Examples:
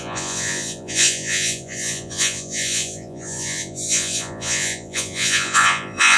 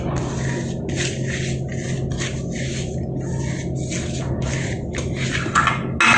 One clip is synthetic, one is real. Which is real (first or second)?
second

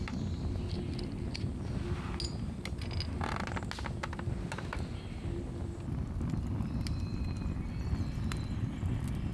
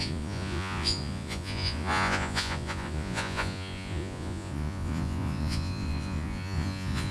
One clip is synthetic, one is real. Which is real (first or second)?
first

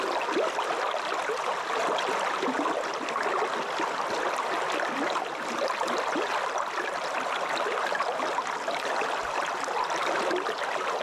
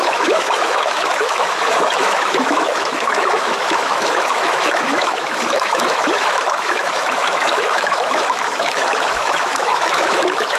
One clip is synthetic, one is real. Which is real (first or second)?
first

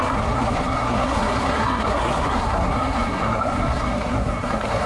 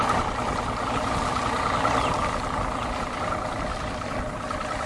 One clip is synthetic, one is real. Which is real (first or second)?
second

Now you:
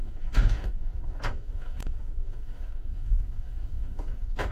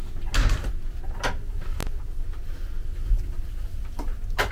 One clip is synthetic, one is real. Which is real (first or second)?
second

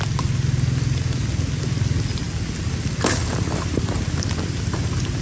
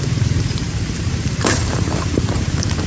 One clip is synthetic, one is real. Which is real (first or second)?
first